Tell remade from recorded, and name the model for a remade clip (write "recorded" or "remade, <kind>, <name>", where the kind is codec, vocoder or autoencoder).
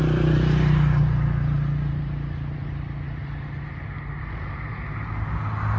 recorded